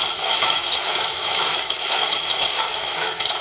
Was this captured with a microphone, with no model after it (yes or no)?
no